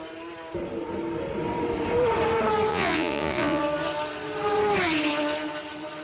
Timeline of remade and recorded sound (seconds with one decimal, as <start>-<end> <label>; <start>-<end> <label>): 0.0-2.7 recorded; 2.7-3.6 remade; 3.6-6.0 recorded